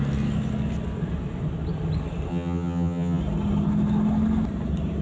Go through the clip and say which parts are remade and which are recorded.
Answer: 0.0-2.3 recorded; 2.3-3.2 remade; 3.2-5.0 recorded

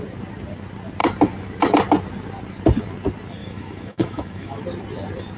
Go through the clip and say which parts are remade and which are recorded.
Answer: 0.0-3.4 recorded; 3.4-4.6 remade; 4.6-5.4 recorded

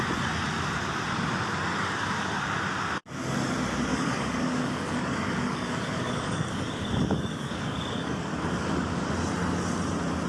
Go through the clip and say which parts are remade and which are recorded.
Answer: 0.0-3.9 recorded; 3.9-9.1 remade; 9.1-10.3 recorded

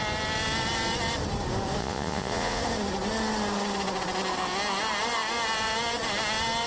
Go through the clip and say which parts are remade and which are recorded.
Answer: 0.0-1.8 recorded; 1.8-2.6 remade; 2.6-6.7 recorded

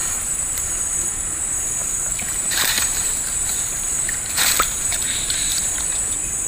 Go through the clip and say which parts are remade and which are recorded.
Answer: 0.0-0.7 remade; 0.7-1.8 recorded; 1.8-5.7 remade; 5.7-6.5 recorded

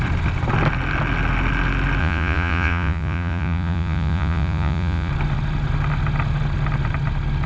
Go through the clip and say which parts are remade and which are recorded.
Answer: 0.0-2.0 recorded; 2.0-5.1 remade; 5.1-7.5 recorded